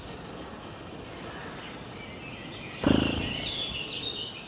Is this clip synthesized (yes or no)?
no